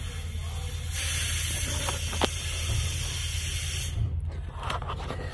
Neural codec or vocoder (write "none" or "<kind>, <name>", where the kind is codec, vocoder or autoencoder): none